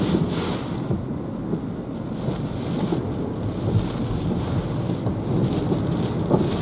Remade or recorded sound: recorded